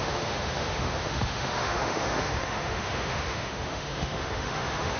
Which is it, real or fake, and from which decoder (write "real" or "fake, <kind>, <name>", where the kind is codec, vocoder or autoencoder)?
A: fake, autoencoder, DAC-VAE